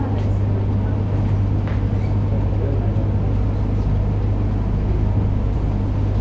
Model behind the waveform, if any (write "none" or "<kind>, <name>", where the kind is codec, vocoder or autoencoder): none